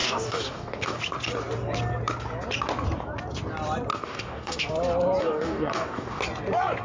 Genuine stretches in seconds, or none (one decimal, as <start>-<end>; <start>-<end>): 1.0-3.9; 4.7-5.2; 6.2-6.8